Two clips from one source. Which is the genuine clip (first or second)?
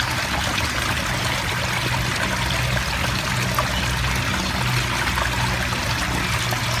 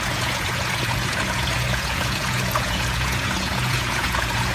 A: first